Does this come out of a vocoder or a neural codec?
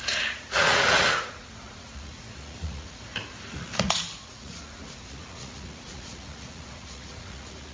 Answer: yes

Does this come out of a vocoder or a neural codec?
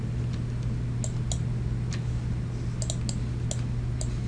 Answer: no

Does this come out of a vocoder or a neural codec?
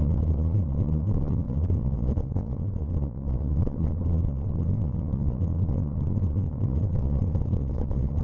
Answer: yes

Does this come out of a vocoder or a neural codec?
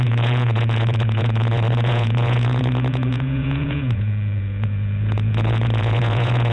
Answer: yes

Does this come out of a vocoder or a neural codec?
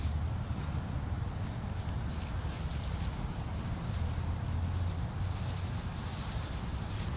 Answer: no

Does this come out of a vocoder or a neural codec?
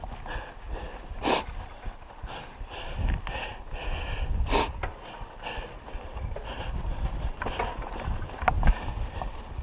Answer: no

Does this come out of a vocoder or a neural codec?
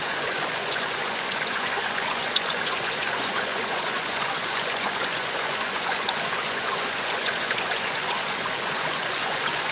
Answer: yes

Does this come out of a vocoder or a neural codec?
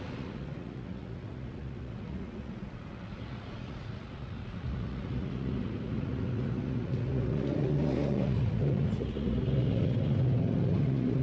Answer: yes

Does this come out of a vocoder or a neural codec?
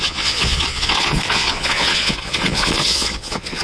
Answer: yes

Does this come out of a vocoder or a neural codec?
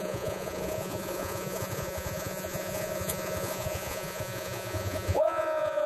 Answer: yes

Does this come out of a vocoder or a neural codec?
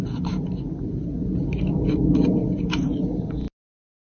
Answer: no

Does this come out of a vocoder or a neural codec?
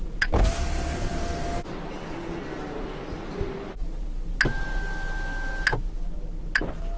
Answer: no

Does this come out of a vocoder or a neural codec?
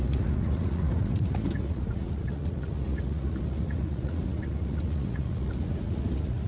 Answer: yes